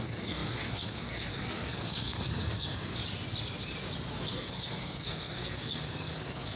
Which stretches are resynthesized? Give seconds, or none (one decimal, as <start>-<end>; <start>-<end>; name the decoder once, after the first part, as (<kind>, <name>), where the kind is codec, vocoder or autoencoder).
0.0-3.0 (codec, SNAC); 4.2-6.6